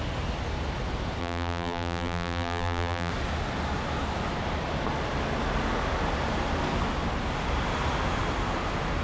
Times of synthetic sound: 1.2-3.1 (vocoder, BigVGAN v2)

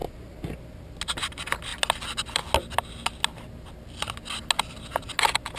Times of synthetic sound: none

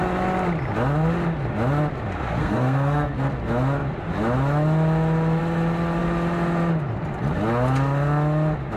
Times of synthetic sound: 2.4-3.3 (codec, SNAC)

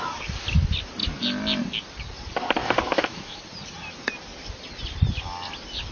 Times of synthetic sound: 2.6-3.4 (autoencoder, DAC-VAE)

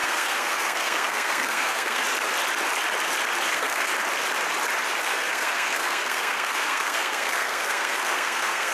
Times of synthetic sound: 0.0-2.0 (codec, SNAC); 3.5-3.9; 5.0-8.7